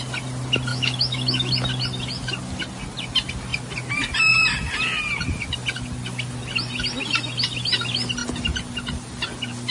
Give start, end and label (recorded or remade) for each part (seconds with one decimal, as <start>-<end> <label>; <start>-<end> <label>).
0.0-0.7 recorded; 0.7-1.5 remade; 1.5-9.7 recorded